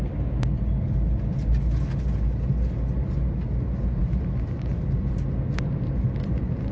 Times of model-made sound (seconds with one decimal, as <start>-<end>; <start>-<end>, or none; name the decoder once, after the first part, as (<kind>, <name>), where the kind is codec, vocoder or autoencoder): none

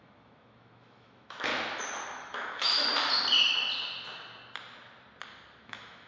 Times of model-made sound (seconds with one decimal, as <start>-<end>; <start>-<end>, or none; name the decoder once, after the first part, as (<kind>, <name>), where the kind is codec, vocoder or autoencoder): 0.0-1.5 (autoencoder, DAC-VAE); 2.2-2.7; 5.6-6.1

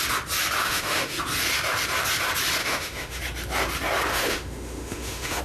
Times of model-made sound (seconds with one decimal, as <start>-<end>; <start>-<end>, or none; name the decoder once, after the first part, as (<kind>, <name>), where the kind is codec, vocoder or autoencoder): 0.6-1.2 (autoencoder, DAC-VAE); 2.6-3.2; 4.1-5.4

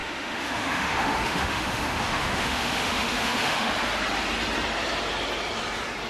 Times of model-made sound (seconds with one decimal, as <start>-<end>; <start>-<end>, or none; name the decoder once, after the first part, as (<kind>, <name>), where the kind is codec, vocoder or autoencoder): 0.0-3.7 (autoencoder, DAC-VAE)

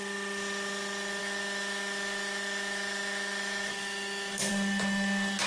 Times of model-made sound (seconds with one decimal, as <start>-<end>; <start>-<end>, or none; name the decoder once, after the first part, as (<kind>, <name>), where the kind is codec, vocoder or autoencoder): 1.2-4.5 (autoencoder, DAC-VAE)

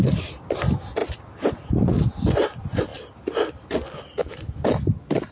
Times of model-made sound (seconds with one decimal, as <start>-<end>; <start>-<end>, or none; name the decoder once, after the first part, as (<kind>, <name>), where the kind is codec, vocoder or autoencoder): 4.2-4.7 (autoencoder, DAC-VAE)

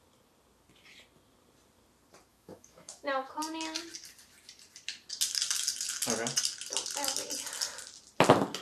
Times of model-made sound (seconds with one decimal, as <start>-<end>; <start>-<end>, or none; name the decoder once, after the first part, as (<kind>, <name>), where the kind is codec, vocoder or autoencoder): 2.3-3.3 (autoencoder, DAC-VAE)